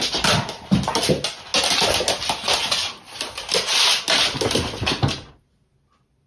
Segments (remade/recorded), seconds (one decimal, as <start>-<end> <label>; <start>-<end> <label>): 0.0-6.3 recorded